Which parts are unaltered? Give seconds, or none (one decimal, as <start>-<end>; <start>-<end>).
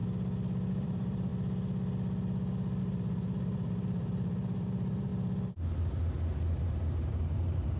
0.0-0.7; 1.3-2.8; 5.1-6.6